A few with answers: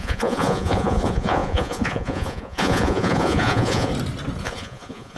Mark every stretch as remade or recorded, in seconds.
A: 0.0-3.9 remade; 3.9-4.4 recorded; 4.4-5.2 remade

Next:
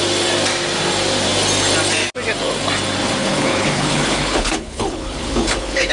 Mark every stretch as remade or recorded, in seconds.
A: 0.0-3.2 recorded; 3.2-5.9 remade

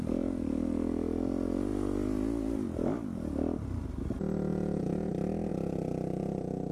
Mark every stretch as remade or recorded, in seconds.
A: 0.0-4.5 recorded; 4.5-5.1 remade; 5.1-5.5 recorded; 5.5-6.7 remade

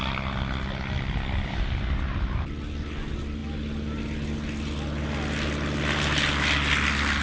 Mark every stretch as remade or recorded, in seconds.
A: 0.0-7.2 recorded